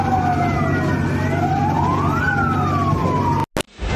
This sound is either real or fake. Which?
real